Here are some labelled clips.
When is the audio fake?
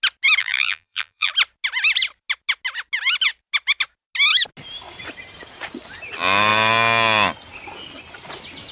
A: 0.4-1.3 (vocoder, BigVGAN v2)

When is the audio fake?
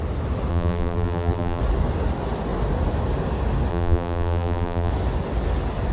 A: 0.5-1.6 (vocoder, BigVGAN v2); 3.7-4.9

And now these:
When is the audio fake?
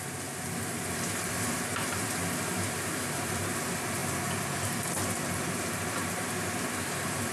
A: 0.0-4.0 (vocoder, BigVGAN v2); 6.8-7.3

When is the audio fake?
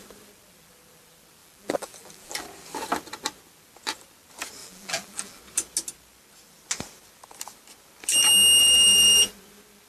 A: 1.4-2.4 (vocoder, BigVGAN v2); 4.6-5.4; 8.6-9.3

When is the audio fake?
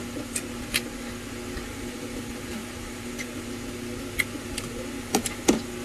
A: 1.7-2.2 (vocoder, BigVGAN v2); 2.6-3.4